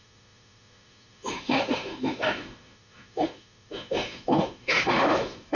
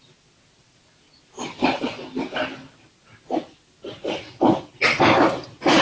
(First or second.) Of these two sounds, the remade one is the first